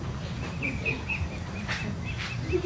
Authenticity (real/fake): real